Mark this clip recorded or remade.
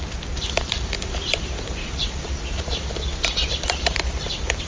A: remade